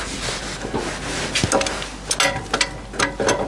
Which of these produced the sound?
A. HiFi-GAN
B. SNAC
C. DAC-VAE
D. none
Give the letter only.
D